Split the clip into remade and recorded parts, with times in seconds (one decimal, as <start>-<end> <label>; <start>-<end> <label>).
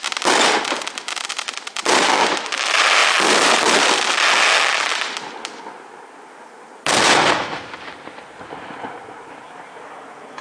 0.0-10.4 recorded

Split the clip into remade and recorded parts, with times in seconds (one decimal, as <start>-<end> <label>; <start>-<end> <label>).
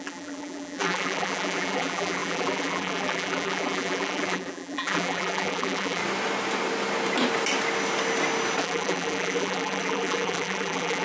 0.0-6.0 remade; 6.0-8.6 recorded; 8.6-11.0 remade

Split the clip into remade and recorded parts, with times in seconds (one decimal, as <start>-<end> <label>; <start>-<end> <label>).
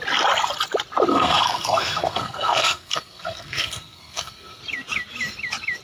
0.0-1.1 recorded; 1.1-4.6 remade; 4.6-5.8 recorded